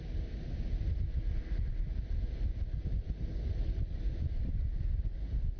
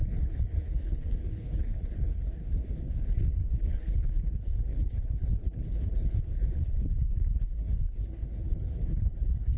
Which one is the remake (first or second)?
second